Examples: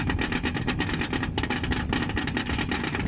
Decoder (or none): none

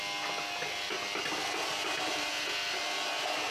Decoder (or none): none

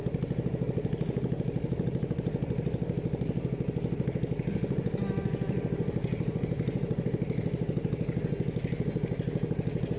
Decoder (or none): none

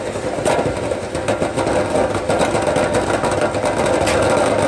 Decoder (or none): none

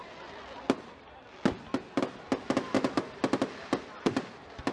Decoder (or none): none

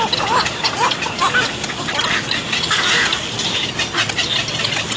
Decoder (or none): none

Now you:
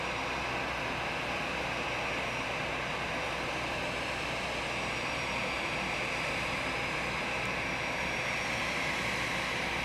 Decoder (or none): none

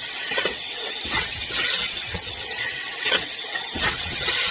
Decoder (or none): vocoder, WaveNeXt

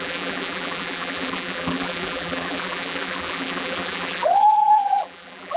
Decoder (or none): vocoder, BigVGAN v2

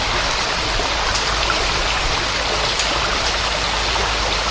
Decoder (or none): none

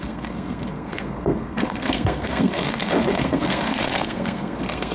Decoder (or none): codec, SNAC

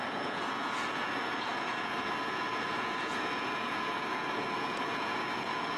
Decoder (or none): vocoder, Vocos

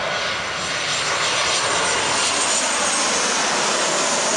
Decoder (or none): none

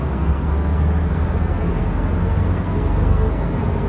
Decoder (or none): codec, SNAC